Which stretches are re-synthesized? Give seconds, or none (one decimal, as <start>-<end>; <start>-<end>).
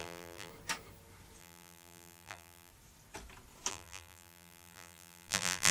0.0-0.5; 1.4-2.7; 3.7-5.7